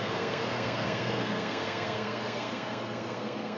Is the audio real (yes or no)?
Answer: no